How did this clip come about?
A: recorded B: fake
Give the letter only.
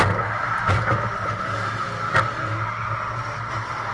A